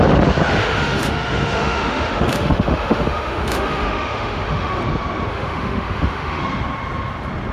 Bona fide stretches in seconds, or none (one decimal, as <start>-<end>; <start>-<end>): 0.0-0.5; 4.8-5.3; 6.4-7.5